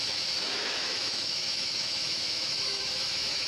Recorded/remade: remade